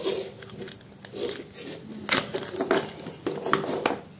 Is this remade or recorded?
recorded